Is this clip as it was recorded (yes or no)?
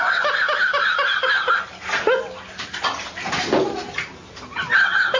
yes